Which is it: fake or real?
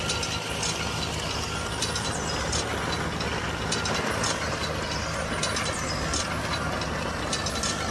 real